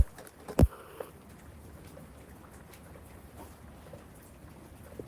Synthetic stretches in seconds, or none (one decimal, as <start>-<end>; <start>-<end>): 0.6-1.1